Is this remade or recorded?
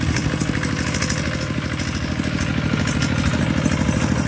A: recorded